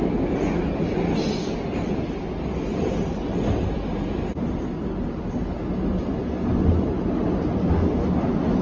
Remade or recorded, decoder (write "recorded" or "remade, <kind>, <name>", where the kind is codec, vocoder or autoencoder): recorded